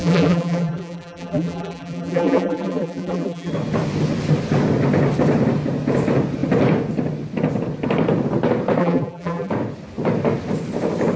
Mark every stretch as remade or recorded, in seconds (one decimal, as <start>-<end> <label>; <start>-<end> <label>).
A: 0.0-3.5 remade; 3.5-8.8 recorded; 8.8-9.5 remade; 9.5-11.2 recorded